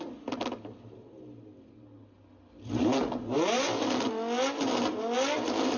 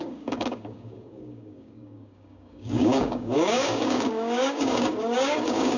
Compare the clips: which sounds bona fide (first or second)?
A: first